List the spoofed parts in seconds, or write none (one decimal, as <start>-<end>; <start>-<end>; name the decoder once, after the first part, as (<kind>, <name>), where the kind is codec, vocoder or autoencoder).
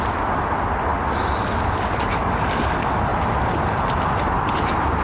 0.9-1.4 (vocoder, BigVGAN v2); 3.1-4.3